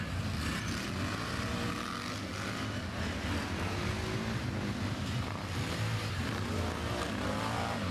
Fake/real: real